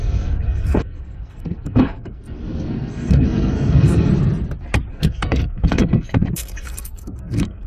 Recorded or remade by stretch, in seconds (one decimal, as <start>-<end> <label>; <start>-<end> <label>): 0.0-4.1 remade; 4.1-4.9 recorded; 4.9-7.7 remade